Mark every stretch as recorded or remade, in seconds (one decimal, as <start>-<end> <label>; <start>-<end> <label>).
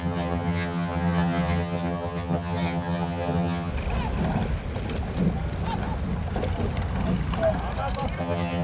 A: 0.0-3.7 remade; 3.7-8.2 recorded; 8.2-8.6 remade